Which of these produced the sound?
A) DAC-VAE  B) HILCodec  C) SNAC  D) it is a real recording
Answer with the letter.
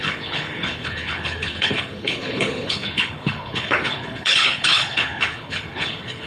B